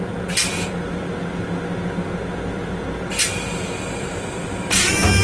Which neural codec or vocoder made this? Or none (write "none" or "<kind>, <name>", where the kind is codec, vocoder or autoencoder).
none